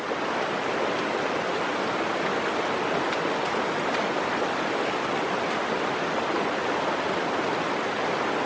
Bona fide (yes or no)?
yes